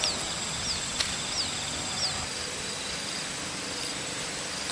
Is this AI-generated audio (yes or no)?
no